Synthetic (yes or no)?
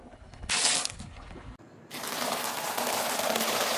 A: no